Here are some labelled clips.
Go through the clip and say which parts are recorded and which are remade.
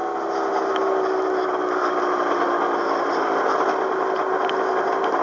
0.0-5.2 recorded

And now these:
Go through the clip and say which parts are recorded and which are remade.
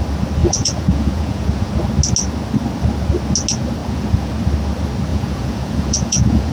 0.0-0.4 recorded; 0.4-1.7 remade; 1.7-3.8 recorded; 3.8-4.3 remade; 4.3-5.1 recorded; 5.1-6.5 remade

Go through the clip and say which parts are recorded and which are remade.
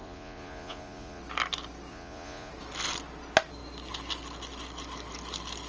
0.0-1.2 remade; 1.2-1.9 recorded; 1.9-2.5 remade; 2.5-5.7 recorded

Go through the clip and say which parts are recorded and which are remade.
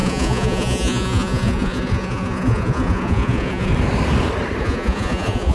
0.0-3.7 remade; 3.7-4.6 recorded; 4.6-5.5 remade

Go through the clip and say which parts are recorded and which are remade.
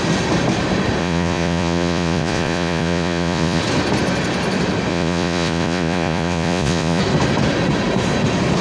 0.0-1.0 recorded; 1.0-3.6 remade; 3.6-4.9 recorded; 4.9-7.0 remade; 7.0-8.6 recorded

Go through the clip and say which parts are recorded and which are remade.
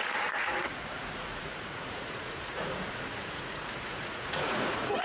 0.0-5.0 remade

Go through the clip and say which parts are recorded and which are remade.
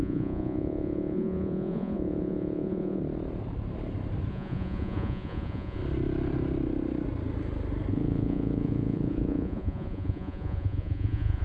0.0-3.0 remade; 3.0-4.3 recorded; 4.3-5.8 remade; 5.8-7.9 recorded; 7.9-11.4 remade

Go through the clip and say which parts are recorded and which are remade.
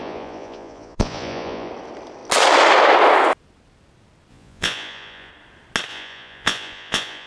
0.0-1.7 remade; 1.7-4.3 recorded; 4.3-5.3 remade; 5.3-5.9 recorded; 5.9-7.3 remade